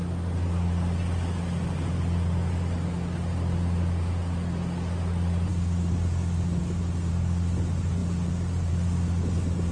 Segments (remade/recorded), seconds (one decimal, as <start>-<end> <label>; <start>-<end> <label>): 0.0-9.7 recorded

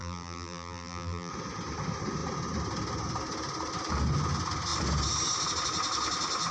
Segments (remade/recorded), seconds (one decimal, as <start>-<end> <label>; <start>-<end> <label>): 0.0-1.3 remade; 1.3-6.5 recorded

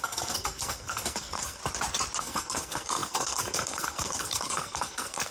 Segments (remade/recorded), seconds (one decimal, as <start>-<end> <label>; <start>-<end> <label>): 0.0-1.6 remade; 1.6-2.2 recorded; 2.2-5.3 remade

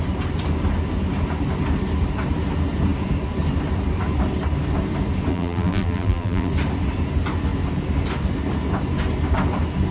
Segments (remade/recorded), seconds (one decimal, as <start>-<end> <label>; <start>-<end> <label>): 0.0-5.3 recorded; 5.3-6.5 remade; 6.5-9.9 recorded